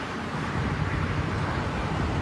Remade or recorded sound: recorded